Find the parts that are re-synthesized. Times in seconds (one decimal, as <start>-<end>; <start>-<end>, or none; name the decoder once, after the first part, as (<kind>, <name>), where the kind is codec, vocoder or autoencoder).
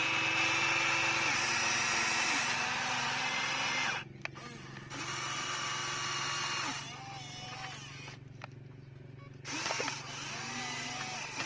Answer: none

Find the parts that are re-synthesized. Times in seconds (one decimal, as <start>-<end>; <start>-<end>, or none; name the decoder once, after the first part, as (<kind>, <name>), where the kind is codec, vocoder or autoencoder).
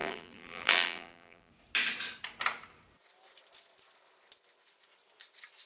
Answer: 0.0-1.5 (vocoder, BigVGAN v2)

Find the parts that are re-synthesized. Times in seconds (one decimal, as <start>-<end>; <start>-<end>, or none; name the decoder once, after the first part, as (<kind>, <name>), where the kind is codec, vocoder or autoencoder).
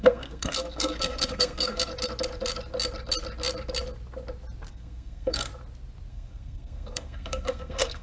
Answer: 0.0-1.9 (codec, SNAC); 4.7-5.5; 6.1-8.0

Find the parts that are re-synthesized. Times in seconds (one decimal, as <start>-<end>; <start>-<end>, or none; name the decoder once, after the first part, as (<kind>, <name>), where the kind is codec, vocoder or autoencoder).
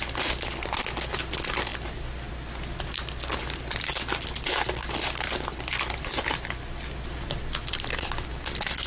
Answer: none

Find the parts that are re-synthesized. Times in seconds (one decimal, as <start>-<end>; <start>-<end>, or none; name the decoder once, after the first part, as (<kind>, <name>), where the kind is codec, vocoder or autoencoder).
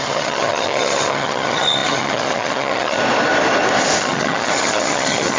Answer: 0.0-3.0 (vocoder, HiFi-GAN); 4.0-5.4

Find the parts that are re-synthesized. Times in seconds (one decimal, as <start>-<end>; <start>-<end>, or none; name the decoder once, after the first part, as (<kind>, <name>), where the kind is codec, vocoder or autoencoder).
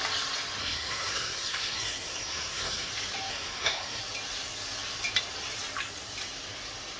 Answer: 0.6-2.9 (codec, SNAC); 3.3-4.0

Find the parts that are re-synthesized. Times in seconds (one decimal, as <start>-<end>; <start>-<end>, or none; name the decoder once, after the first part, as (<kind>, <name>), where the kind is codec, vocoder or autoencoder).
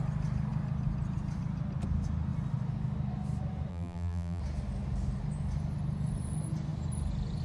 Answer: 3.7-4.4 (vocoder, BigVGAN v2)